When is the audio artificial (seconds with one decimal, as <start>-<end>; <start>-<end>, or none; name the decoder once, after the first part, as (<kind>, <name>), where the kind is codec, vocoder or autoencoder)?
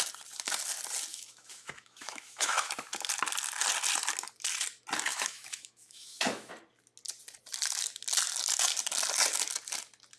1.1-2.7 (autoencoder, DAC-VAE); 5.1-6.5